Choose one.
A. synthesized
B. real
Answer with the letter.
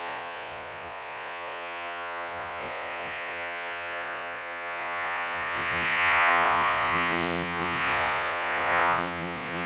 A